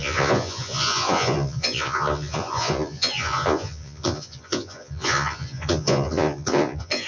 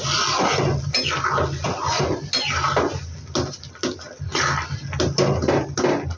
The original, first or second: second